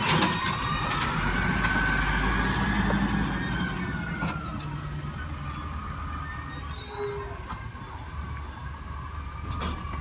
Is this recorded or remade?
recorded